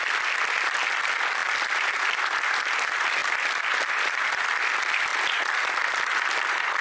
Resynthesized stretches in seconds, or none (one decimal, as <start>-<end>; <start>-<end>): none